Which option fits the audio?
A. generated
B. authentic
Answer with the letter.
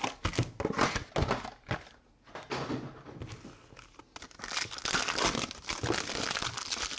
B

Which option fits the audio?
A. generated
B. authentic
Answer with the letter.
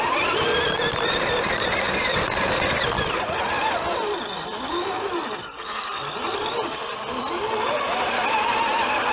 B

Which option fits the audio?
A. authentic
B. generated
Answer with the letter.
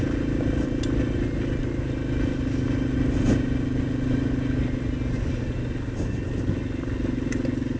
A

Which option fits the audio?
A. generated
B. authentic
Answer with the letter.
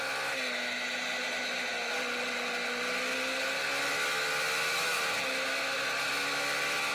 B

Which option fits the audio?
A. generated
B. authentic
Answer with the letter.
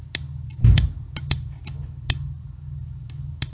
B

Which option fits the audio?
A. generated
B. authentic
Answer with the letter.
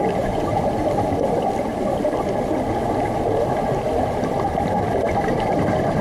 B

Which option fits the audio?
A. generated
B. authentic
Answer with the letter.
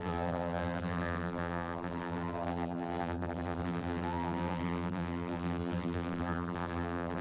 A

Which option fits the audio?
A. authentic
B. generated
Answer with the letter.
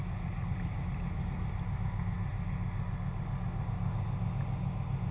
A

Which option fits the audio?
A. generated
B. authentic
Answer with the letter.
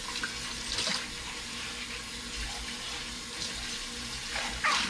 B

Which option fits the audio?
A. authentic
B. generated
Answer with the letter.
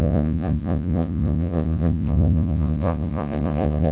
B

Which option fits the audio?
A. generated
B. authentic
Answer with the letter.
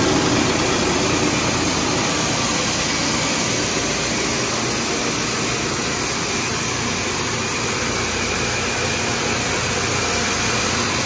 B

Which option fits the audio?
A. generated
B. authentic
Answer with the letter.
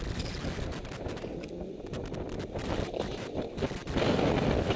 B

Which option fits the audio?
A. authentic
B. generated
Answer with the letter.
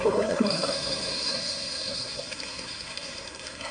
B